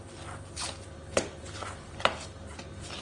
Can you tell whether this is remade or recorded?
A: recorded